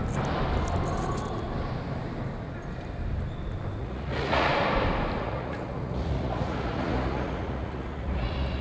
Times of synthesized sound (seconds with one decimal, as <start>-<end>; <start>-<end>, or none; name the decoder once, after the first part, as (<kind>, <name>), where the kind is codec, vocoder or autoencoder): 3.8-4.5 (vocoder, Vocos); 5.2-8.6